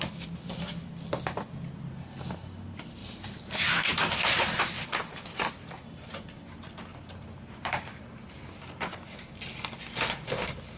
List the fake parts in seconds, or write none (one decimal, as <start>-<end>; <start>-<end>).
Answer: 3.0-4.6; 6.9-8.3